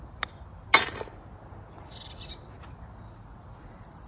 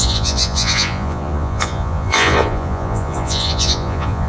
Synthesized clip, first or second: second